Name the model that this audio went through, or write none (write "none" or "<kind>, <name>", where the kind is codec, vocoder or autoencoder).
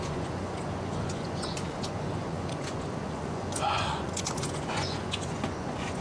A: vocoder, Vocos